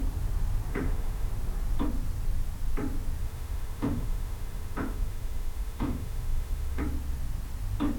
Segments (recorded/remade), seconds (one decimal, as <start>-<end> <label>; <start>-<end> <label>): 0.0-0.7 recorded; 0.7-1.3 remade; 1.3-3.2 recorded; 3.2-6.8 remade; 6.8-8.0 recorded